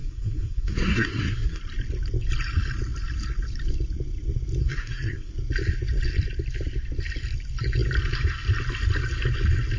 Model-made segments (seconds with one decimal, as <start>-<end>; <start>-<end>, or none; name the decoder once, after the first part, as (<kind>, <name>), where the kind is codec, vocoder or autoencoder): 0.0-1.6 (codec, SNAC); 4.6-5.3